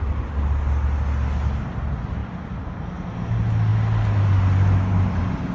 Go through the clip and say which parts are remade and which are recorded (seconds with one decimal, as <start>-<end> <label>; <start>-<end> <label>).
0.0-2.2 recorded; 2.2-2.9 remade; 2.9-5.5 recorded